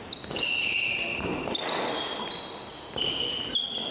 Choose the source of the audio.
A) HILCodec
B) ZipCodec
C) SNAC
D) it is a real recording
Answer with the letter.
D